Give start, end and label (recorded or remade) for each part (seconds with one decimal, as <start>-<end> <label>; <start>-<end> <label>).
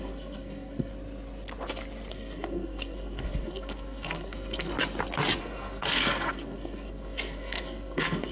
0.0-0.9 remade; 0.9-2.1 recorded; 2.1-4.7 remade; 4.7-5.4 recorded; 5.4-8.3 remade